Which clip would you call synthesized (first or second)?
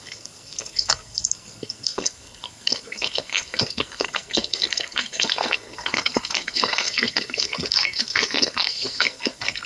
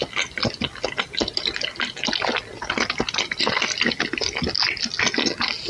first